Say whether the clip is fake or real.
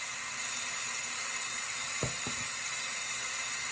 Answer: real